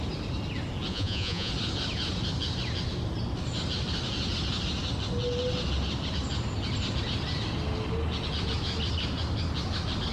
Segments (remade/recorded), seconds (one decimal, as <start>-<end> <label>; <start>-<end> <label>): 0.0-0.9 recorded; 0.9-1.5 remade; 1.5-10.1 recorded